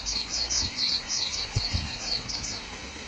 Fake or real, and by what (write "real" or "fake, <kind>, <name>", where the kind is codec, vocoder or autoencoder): fake, codec, SNAC